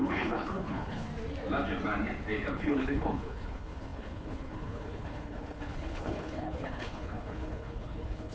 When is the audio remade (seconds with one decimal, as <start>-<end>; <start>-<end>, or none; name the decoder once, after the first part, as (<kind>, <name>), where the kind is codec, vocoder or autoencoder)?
0.0-1.1 (codec, HILCodec); 2.5-8.3